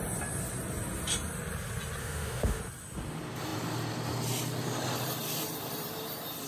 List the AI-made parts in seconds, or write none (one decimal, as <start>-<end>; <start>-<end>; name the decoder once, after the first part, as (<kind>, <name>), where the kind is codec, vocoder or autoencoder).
2.0-2.6 (autoencoder, DAC-VAE)